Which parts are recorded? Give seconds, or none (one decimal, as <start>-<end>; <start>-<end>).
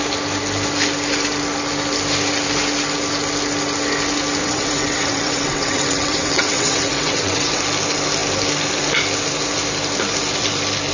0.0-4.4; 7.6-10.9